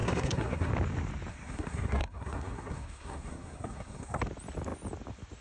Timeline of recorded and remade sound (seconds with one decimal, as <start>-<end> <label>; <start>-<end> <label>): 0.0-0.7 remade; 0.7-1.3 recorded; 1.3-4.2 remade; 4.2-5.4 recorded